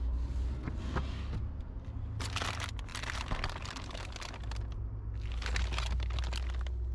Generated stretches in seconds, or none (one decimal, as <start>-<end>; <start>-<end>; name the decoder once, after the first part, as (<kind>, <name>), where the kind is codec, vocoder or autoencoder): 2.9-3.9 (vocoder, BigVGAN v2)

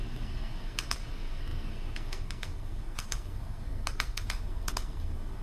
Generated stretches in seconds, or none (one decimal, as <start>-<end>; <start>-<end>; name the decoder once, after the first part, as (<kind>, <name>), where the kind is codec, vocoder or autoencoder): 0.0-5.4 (codec, SNAC)

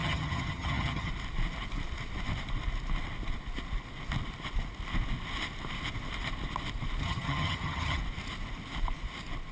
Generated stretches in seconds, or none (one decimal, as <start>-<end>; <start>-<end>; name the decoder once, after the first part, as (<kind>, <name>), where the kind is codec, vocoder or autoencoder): 0.0-1.1 (vocoder, HiFi-GAN); 7.0-8.0

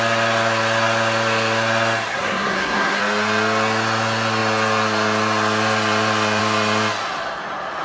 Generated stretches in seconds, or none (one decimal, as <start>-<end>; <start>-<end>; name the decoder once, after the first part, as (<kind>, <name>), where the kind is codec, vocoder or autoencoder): 2.1-3.0 (codec, SNAC)

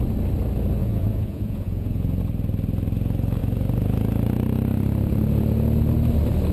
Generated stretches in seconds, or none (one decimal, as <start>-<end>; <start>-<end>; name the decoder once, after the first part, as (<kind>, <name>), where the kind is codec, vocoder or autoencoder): 0.8-2.2 (vocoder, Vocos)